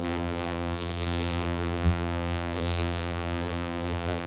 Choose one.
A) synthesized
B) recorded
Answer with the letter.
A